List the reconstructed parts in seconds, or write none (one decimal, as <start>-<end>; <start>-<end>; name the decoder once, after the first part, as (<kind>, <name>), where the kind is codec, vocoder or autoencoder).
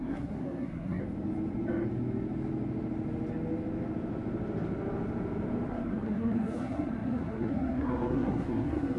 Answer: 0.0-1.0 (codec, SNAC); 5.7-9.0